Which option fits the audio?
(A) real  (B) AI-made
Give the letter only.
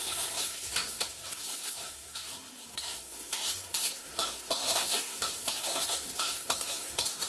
B